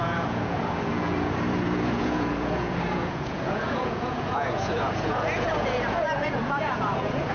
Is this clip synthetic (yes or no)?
yes